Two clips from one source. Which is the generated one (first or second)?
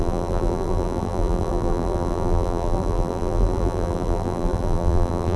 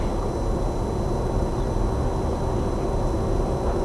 first